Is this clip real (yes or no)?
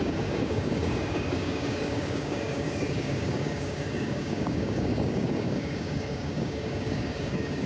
no